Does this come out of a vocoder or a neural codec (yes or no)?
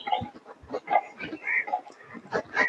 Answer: no